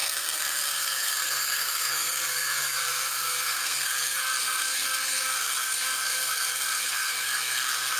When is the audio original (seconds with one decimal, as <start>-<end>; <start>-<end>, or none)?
none